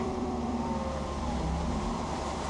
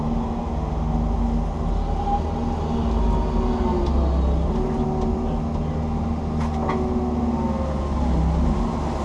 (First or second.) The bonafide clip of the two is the second